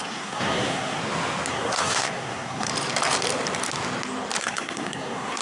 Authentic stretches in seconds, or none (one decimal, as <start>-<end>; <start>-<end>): 1.0-1.5; 2.7-4.4